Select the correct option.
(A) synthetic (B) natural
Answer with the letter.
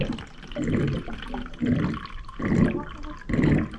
B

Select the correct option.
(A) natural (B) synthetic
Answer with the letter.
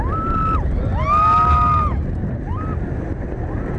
A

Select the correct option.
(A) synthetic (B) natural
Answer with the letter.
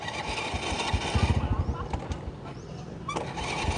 B